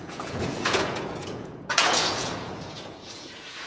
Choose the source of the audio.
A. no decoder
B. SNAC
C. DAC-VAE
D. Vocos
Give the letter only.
D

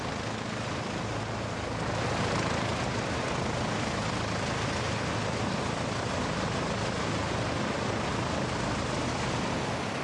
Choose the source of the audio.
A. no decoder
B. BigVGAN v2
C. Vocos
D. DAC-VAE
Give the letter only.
A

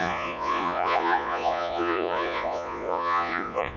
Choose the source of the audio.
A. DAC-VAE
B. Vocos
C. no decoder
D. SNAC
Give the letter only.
B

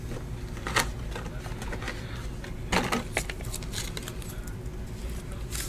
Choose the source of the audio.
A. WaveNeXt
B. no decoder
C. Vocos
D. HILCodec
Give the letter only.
B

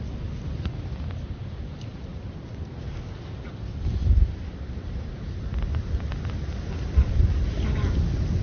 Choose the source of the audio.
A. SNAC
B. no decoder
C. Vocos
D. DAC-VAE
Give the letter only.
B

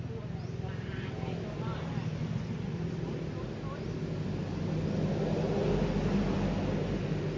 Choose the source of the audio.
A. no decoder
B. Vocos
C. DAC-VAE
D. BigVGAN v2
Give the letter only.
A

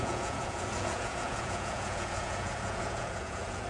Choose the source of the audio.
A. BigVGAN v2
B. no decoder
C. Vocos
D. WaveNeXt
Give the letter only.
C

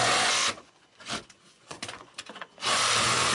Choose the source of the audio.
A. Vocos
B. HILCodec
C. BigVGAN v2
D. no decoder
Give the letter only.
A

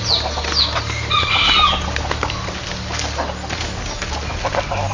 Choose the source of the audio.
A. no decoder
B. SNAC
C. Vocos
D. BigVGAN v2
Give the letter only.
A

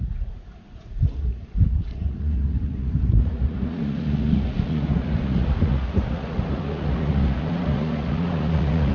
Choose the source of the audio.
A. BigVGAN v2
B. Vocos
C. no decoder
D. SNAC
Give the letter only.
B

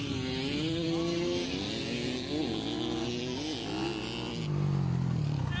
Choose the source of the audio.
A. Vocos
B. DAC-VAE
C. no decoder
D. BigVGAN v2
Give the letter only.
C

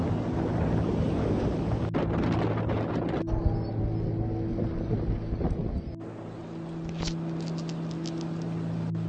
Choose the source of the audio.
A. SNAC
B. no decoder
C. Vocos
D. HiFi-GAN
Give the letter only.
B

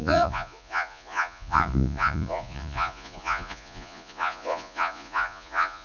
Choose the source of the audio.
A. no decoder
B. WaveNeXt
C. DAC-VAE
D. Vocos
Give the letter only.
D